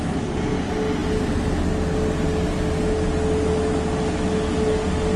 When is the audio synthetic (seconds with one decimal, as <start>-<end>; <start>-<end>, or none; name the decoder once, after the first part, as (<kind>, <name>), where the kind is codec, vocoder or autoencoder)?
none